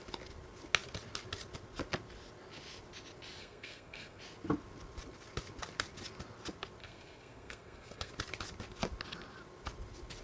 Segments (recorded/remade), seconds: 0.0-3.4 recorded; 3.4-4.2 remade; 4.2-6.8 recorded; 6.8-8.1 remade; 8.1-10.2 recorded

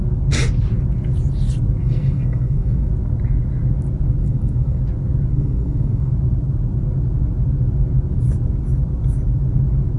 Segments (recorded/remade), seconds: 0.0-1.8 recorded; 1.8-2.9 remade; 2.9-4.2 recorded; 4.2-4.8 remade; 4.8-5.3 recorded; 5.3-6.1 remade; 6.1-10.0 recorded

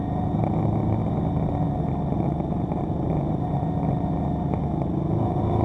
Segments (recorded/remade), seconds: 0.0-5.6 recorded

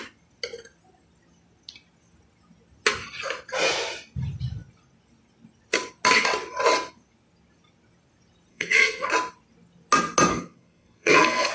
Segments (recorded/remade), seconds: 0.0-8.5 recorded; 8.5-9.1 remade; 9.1-10.3 recorded; 10.3-11.5 remade

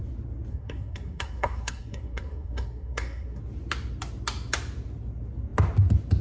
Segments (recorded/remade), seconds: 0.0-0.5 recorded; 0.5-3.4 remade; 3.4-6.2 recorded

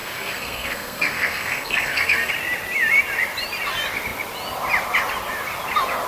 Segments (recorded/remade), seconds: 0.0-2.3 remade; 2.3-6.1 recorded

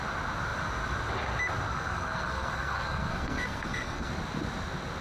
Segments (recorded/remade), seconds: 0.0-1.7 recorded; 1.7-4.1 remade; 4.1-5.0 recorded